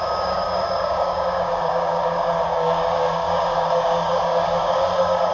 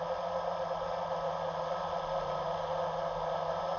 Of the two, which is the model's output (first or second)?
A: first